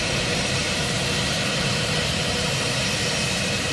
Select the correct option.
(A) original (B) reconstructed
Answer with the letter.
B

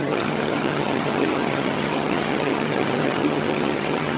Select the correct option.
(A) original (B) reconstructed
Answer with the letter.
B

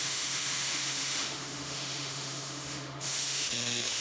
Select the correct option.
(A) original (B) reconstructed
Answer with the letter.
B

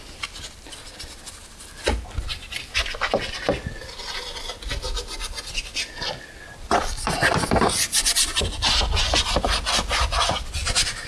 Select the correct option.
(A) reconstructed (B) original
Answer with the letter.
B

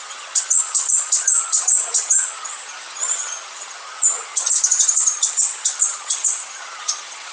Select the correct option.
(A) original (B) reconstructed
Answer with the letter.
B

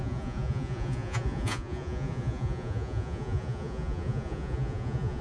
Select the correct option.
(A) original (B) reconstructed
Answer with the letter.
B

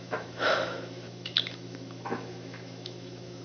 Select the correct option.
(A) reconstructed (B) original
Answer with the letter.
A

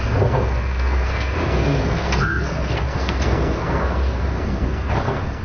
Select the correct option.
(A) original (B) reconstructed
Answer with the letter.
B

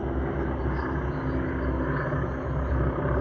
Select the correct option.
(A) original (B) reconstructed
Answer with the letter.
A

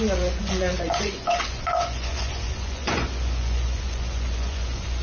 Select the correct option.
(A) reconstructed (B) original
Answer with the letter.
A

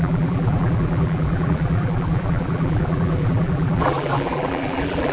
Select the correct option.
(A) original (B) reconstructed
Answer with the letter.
B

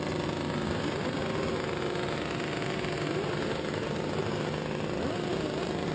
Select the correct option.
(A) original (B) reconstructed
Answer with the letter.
A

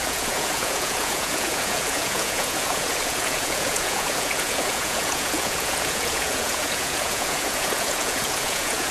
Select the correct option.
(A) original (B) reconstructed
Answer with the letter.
B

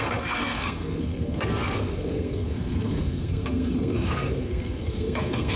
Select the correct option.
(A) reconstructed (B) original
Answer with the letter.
A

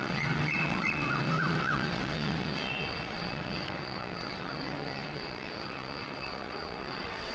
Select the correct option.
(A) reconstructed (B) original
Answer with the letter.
A